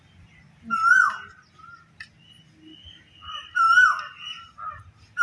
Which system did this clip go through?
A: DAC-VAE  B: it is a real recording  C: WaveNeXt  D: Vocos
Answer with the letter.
B